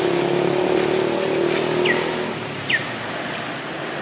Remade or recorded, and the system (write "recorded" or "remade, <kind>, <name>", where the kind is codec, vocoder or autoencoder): recorded